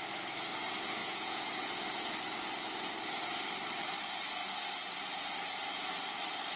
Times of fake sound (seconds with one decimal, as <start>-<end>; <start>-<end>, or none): 1.0-1.7